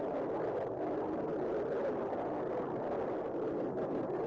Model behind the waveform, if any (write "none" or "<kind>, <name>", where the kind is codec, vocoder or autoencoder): none